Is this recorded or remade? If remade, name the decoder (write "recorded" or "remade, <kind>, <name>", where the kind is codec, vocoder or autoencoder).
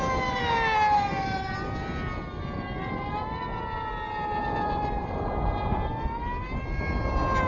recorded